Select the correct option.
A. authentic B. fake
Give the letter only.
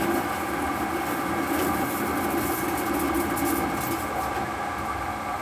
A